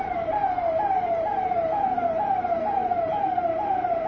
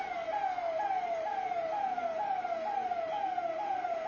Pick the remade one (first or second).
first